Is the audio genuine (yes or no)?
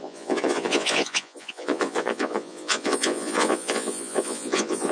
no